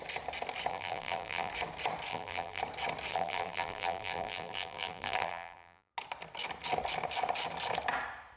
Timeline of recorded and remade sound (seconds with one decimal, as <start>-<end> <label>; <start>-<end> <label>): 0.0-0.7 recorded; 0.7-1.5 remade; 1.5-2.1 recorded; 2.1-2.6 remade; 2.6-3.1 recorded; 3.1-5.9 remade; 5.9-8.4 recorded